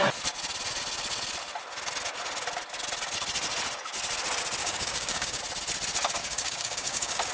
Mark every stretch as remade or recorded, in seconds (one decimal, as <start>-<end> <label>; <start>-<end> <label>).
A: 0.0-4.6 recorded; 4.6-5.4 remade; 5.4-6.2 recorded; 6.2-7.3 remade